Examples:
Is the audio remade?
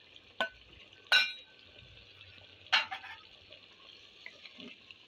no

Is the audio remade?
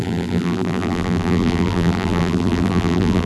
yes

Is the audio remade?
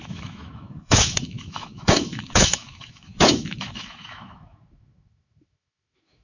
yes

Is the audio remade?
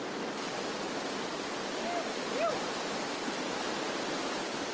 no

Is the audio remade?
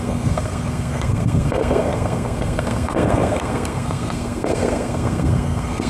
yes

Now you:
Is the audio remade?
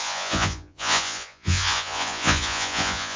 yes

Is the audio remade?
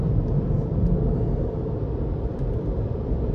yes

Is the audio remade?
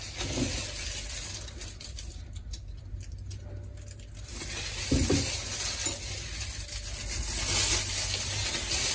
no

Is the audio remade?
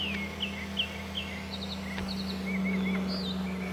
no